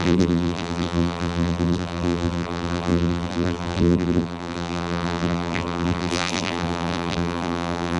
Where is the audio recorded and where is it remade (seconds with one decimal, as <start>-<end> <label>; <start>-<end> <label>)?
0.0-8.0 remade